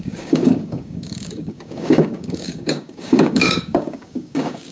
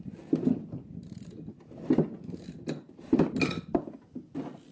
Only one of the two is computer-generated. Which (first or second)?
first